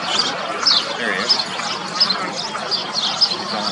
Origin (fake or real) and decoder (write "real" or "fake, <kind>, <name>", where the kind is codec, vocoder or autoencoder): real